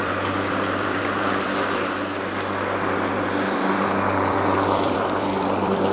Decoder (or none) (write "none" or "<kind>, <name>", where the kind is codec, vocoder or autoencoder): vocoder, BigVGAN v2